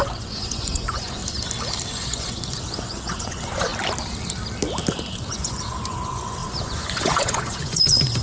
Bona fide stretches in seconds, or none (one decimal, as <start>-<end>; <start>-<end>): 1.2-1.9; 3.7-5.2